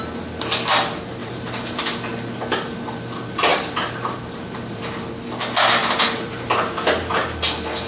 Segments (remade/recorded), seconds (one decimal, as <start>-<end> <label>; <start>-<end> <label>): 0.0-1.2 recorded; 1.2-1.8 remade; 1.8-3.5 recorded; 3.5-4.8 remade; 4.8-5.8 recorded; 5.8-7.1 remade; 7.1-7.9 recorded